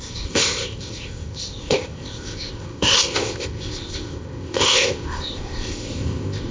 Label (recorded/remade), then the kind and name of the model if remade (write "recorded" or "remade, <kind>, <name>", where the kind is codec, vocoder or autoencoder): remade, codec, ZipCodec